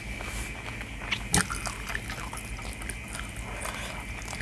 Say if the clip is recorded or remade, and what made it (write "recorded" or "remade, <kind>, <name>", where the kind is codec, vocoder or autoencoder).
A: recorded